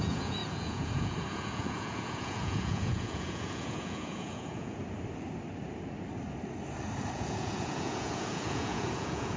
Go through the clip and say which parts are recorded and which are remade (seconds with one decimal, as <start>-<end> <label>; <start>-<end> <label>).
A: 0.0-4.8 remade; 4.8-7.1 recorded; 7.1-9.4 remade